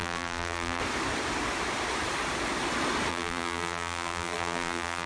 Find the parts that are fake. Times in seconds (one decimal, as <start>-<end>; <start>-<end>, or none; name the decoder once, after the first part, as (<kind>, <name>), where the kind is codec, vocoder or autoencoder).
0.0-0.8 (vocoder, BigVGAN v2); 3.1-5.1